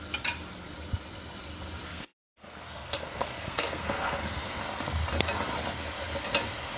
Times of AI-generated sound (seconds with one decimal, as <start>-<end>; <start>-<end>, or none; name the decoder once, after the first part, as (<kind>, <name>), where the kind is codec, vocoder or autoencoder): 1.9-4.6 (codec, SNAC)